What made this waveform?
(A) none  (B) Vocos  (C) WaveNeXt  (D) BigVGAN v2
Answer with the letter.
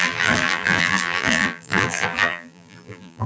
D